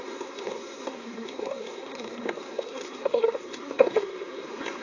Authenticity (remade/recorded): remade